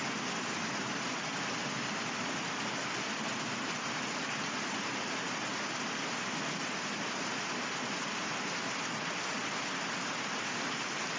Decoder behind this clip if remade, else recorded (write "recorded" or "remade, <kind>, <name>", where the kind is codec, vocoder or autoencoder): recorded